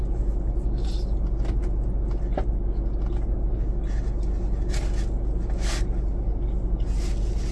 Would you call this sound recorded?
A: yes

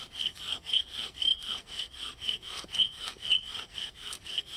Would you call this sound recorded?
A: no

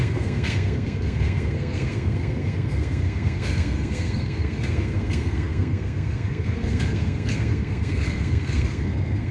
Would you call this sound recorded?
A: no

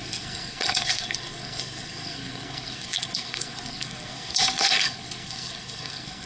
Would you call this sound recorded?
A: no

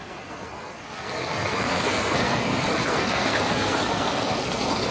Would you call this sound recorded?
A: no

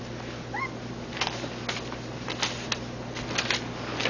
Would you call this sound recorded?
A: yes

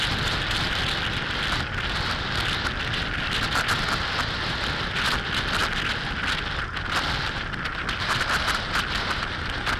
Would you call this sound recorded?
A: yes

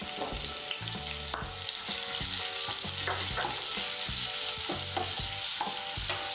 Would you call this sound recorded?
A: yes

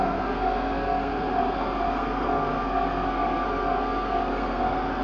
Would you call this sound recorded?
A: no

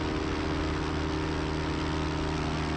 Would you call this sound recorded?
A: yes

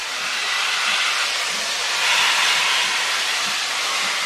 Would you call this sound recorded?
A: yes